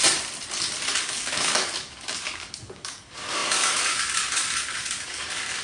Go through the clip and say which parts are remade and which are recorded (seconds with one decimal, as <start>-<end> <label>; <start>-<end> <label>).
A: 0.0-1.0 recorded; 1.0-5.6 remade